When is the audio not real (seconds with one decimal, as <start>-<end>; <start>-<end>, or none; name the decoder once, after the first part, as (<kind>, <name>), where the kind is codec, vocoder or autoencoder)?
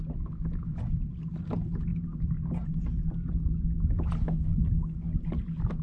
none